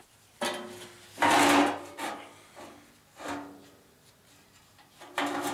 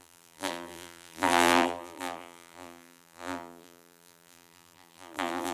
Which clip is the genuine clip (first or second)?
first